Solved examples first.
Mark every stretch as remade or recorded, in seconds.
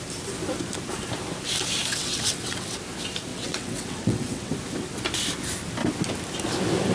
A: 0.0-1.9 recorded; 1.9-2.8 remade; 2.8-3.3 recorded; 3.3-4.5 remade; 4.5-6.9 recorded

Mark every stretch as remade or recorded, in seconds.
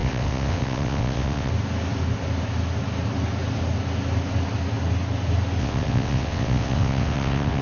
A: 0.0-1.5 remade; 1.5-5.6 recorded; 5.6-7.6 remade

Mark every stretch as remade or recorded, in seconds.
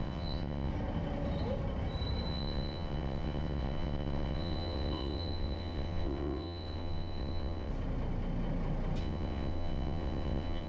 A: 0.0-0.7 remade; 0.7-2.3 recorded; 2.3-7.7 remade; 7.7-9.0 recorded; 9.0-10.7 remade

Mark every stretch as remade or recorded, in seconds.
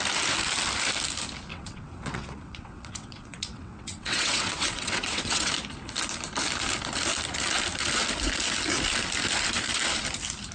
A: 0.0-1.5 recorded; 1.5-5.5 remade; 5.5-10.5 recorded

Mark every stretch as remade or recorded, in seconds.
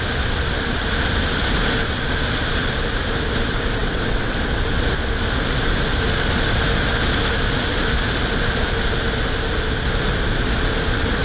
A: 0.0-3.8 recorded; 3.8-4.4 remade; 4.4-11.2 recorded